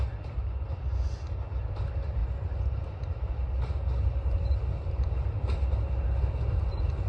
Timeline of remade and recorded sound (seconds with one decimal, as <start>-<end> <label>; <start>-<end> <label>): 0.0-7.1 recorded